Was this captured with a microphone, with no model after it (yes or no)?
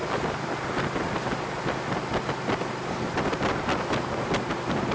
yes